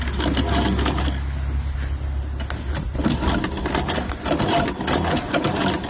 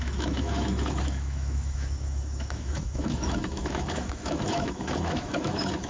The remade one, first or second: second